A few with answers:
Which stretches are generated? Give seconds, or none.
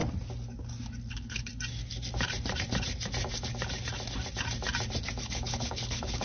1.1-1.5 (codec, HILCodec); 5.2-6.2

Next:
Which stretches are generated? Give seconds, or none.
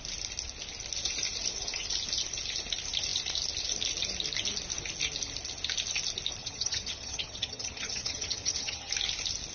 6.4-8.9 (vocoder, HiFi-GAN)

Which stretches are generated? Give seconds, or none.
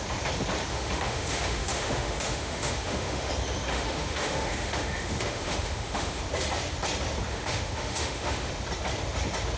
0.7-3.3 (autoencoder, DAC-VAE); 3.7-6.2; 7.3-8.5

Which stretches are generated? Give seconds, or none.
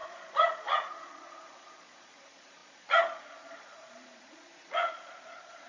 0.0-5.7 (vocoder, Vocos)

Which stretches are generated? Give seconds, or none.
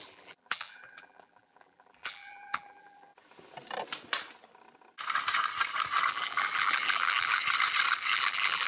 0.0-3.1 (vocoder, BigVGAN v2); 6.1-7.4; 8.1-8.7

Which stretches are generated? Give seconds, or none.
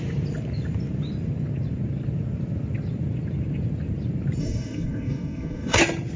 4.4-5.8 (codec, DAC)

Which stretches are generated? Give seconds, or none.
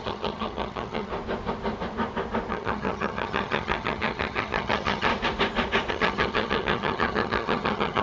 0.0-1.1 (vocoder, HiFi-GAN); 2.5-5.1; 5.9-8.0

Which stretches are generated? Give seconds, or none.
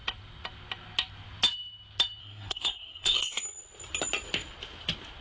2.2-3.4 (codec, SNAC)